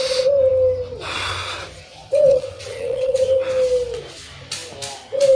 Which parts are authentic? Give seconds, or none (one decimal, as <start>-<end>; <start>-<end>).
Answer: 0.0-2.3; 3.2-5.4